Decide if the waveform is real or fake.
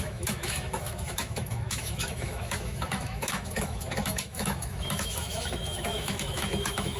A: fake